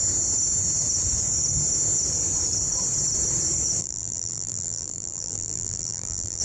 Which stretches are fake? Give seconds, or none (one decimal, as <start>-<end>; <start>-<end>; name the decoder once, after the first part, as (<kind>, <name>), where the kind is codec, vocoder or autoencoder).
3.8-6.4 (vocoder, BigVGAN v2)